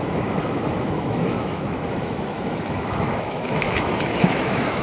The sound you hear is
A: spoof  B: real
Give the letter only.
A